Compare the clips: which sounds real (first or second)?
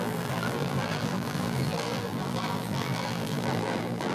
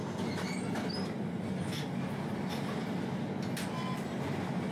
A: second